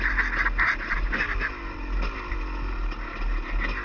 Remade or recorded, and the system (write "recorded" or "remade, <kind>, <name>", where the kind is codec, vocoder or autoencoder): recorded